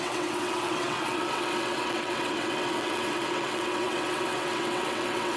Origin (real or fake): fake